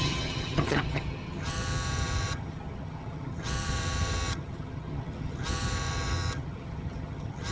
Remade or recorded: remade